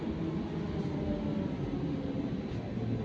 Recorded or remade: recorded